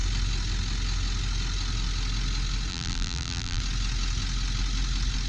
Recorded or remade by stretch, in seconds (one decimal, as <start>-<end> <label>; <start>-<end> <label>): 0.0-2.7 recorded; 2.7-3.6 remade; 3.6-5.3 recorded